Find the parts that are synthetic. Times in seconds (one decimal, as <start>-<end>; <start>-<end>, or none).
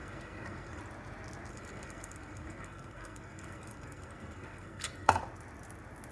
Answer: 0.0-0.8; 1.5-5.2